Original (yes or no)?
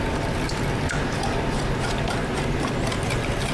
yes